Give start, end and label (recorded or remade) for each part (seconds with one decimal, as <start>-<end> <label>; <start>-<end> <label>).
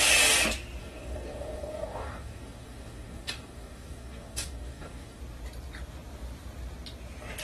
0.0-0.8 recorded; 0.8-5.2 remade; 5.2-7.4 recorded